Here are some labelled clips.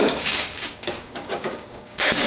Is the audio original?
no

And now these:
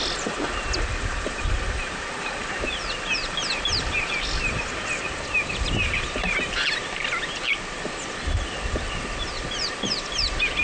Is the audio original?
yes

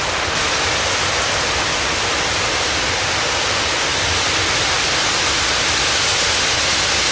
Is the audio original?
yes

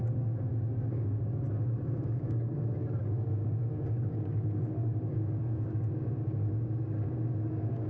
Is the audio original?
no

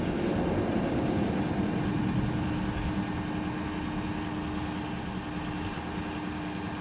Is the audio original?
yes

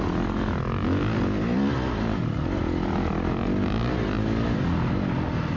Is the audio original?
yes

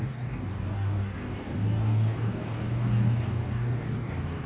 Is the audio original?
no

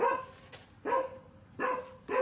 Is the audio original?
yes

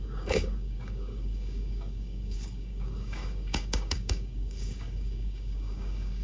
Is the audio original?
no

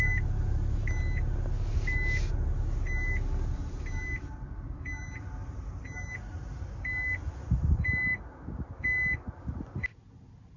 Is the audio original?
yes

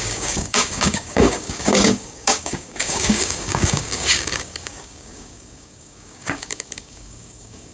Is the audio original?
no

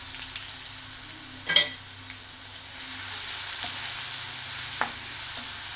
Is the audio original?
yes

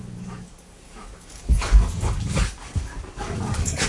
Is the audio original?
no